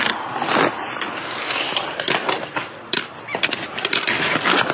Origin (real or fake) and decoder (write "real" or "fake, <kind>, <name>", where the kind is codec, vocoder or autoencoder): real